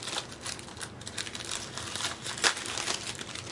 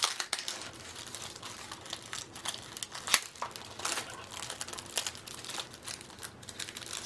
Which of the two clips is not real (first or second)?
first